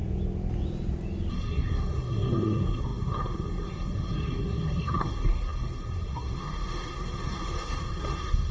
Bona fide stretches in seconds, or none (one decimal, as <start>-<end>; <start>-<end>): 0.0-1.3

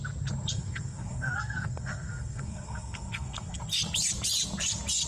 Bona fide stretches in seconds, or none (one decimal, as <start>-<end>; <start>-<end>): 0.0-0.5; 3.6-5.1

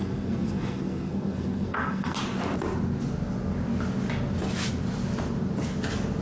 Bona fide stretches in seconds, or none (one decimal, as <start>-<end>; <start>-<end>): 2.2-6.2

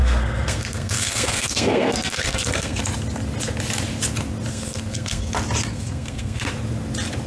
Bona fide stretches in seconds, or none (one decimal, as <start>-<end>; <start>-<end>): 2.8-4.5; 5.3-5.7; 6.5-7.3

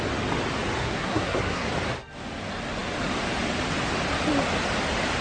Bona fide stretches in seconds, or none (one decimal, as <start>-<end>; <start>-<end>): 0.0-0.8; 1.7-5.2

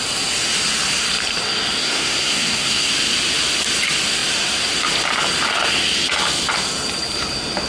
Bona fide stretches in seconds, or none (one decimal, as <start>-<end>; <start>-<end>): 0.0-1.8; 2.9-7.7